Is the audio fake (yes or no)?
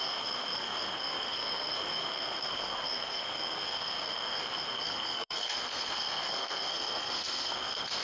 yes